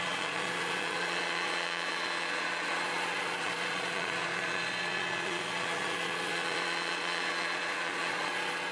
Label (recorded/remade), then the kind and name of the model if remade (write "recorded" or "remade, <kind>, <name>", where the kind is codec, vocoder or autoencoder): remade, vocoder, Vocos